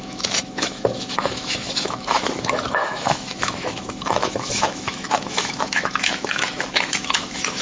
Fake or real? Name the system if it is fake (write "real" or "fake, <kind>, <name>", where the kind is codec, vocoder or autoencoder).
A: fake, autoencoder, DAC-VAE